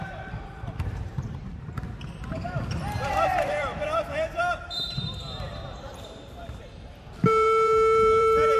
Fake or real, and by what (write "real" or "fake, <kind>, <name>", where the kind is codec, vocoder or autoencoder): fake, vocoder, BigVGAN v2